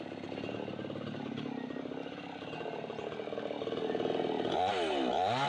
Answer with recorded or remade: recorded